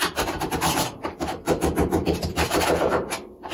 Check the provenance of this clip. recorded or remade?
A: remade